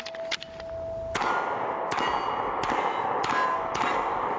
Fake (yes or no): no